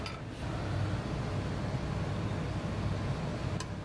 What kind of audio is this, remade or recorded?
recorded